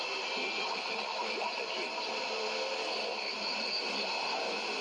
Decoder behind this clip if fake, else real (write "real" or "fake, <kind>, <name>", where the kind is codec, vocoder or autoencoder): real